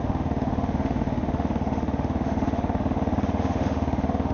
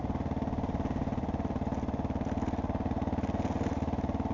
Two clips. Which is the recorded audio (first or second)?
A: second